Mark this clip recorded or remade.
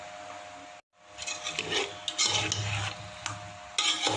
recorded